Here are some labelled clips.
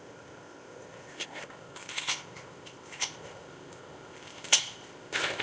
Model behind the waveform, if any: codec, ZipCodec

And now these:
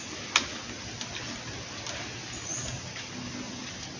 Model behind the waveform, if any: none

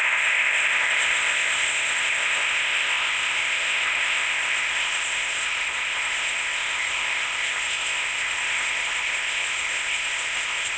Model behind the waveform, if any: codec, ZipCodec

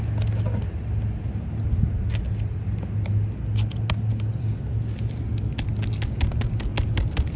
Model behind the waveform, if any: none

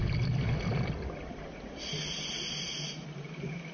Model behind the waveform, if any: none